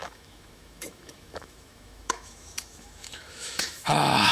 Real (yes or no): no